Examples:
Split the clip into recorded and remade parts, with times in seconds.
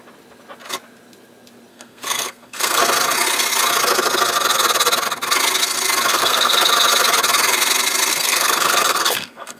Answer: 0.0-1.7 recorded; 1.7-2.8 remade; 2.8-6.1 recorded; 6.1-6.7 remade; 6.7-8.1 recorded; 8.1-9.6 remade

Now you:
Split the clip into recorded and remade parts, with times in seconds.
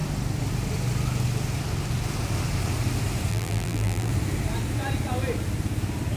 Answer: 0.0-3.3 recorded; 3.3-4.1 remade; 4.1-6.2 recorded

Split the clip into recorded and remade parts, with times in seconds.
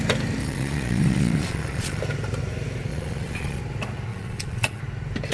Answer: 0.0-0.4 recorded; 0.4-2.0 remade; 2.0-2.9 recorded; 2.9-3.6 remade; 3.6-4.1 recorded; 4.1-4.8 remade; 4.8-5.3 recorded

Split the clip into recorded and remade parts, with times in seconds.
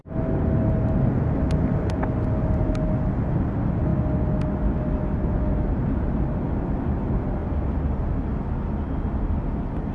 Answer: 0.0-9.9 recorded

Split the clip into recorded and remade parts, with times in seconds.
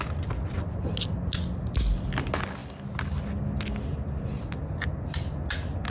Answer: 0.0-5.9 recorded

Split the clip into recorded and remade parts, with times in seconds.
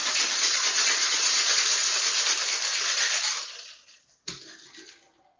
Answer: 0.0-1.6 remade; 1.6-2.7 recorded; 2.7-4.1 remade; 4.1-5.4 recorded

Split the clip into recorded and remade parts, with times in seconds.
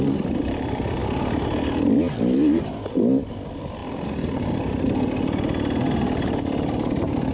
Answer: 0.0-7.3 remade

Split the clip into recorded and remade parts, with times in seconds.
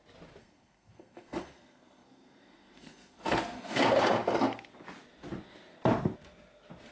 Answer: 0.0-0.4 recorded; 0.4-3.8 remade; 3.8-6.9 recorded